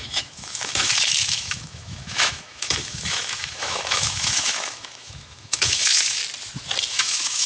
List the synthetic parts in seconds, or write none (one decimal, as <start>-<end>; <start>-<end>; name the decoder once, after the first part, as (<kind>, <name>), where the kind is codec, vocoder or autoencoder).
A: 0.0-6.2 (autoencoder, DAC-VAE); 6.9-7.5